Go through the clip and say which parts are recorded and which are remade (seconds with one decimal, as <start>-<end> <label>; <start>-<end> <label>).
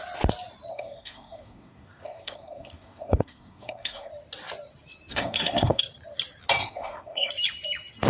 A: 0.0-0.7 recorded; 0.7-4.1 remade; 4.1-5.1 recorded; 5.1-5.8 remade; 5.8-6.6 recorded; 6.6-7.3 remade; 7.3-8.1 recorded